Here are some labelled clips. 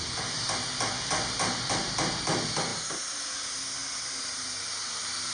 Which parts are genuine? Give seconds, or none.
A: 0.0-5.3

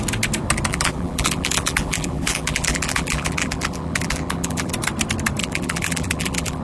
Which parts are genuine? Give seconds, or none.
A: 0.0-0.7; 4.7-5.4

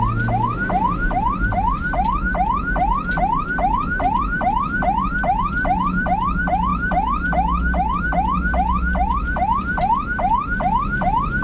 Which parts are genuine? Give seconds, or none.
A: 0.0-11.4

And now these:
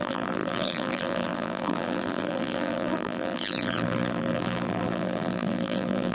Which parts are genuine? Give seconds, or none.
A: none

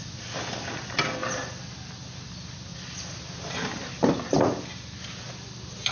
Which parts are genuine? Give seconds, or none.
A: 0.0-5.9

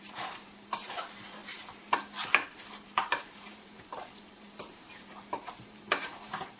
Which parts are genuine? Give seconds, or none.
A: 1.4-2.7

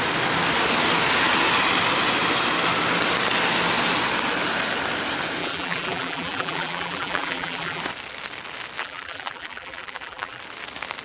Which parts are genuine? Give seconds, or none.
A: 0.0-5.4; 7.8-8.8; 10.4-11.0